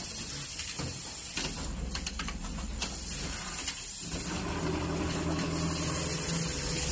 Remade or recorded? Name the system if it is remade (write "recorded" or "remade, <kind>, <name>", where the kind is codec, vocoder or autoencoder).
recorded